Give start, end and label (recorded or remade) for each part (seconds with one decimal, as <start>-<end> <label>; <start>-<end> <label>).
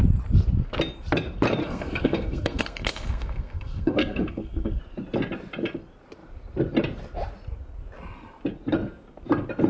0.0-1.6 recorded; 1.6-4.8 remade; 4.8-9.7 recorded